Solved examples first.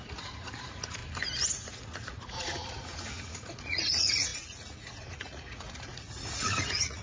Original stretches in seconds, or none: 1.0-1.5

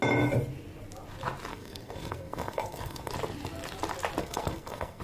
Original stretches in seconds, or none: 0.0-1.5; 3.1-4.2

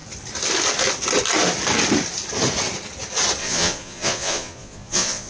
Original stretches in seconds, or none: 0.0-3.4

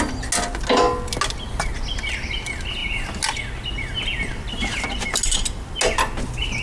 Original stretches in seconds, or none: 0.0-6.6

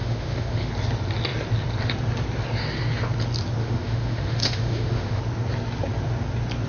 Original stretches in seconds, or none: 0.7-3.6; 5.2-6.7